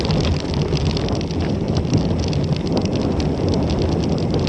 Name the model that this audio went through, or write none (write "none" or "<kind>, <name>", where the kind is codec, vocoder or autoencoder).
none